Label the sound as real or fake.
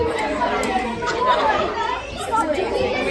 real